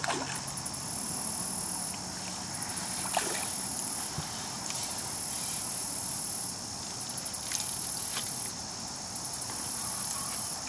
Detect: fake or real real